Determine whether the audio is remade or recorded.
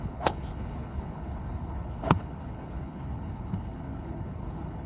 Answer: remade